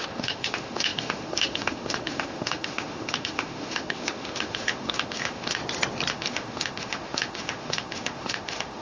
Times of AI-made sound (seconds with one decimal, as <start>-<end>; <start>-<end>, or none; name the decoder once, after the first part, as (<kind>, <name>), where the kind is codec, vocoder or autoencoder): 0.0-5.6 (autoencoder, DAC-VAE); 6.1-8.8